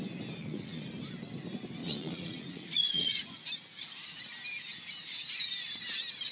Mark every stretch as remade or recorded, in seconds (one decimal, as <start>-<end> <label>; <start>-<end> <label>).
0.0-0.4 recorded; 0.4-0.9 remade; 0.9-1.8 recorded; 1.8-3.5 remade; 3.5-6.3 recorded